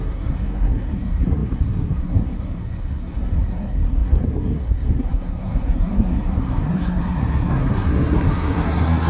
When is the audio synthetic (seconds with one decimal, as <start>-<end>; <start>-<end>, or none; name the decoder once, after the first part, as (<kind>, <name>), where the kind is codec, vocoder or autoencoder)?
0.0-9.1 (codec, SNAC)